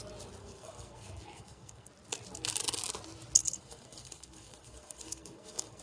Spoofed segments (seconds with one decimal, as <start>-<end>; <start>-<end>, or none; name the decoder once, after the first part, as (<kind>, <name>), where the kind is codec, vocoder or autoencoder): 0.4-1.9 (codec, SNAC); 3.4-5.8